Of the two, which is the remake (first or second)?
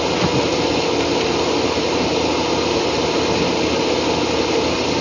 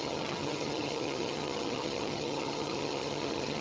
second